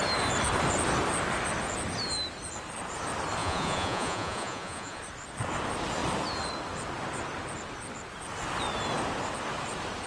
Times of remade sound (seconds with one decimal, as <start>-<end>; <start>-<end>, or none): 3.4-5.0